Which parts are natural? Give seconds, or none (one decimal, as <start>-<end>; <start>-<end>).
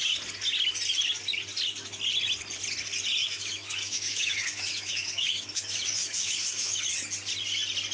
0.0-3.2; 6.9-7.9